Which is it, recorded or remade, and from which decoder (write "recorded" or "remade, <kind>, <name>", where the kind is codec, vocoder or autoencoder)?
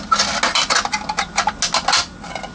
recorded